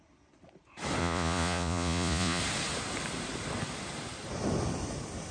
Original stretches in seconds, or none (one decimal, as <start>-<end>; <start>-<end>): 0.0-1.0; 2.4-5.3